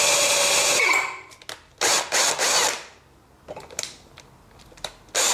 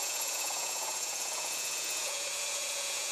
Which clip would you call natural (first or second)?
first